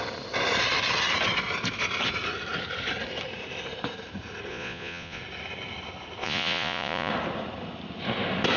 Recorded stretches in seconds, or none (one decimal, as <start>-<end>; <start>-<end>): 0.0-4.5; 5.2-6.2; 7.1-8.6